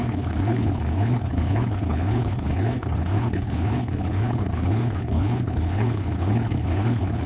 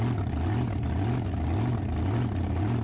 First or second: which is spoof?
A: first